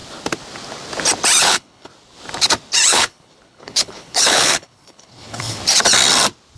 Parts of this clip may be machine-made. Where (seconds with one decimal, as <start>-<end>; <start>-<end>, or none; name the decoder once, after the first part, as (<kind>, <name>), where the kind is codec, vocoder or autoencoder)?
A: 1.4-1.9 (codec, HILCodec); 2.9-5.6